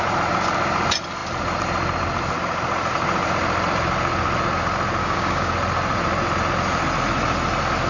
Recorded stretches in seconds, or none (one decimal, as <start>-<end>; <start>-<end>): 0.0-5.0; 5.5-7.9